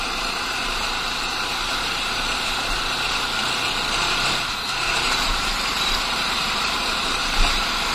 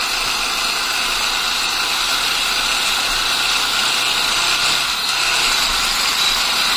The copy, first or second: first